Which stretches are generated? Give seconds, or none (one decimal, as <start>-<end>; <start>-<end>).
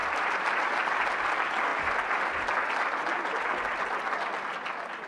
0.0-1.1